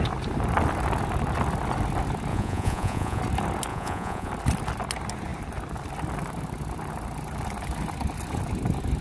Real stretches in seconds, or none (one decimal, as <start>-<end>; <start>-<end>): 0.0-2.3; 3.2-3.7; 4.3-9.0